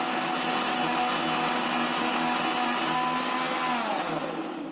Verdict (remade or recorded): recorded